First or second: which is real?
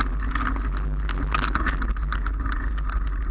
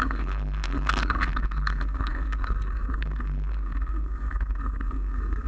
first